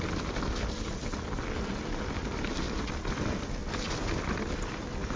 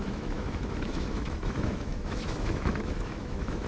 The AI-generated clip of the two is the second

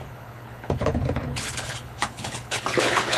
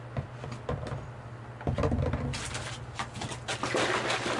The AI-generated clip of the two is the first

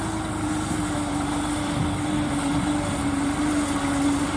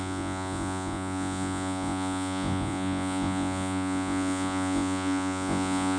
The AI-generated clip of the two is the second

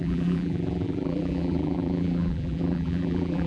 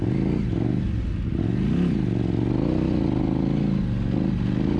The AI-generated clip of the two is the first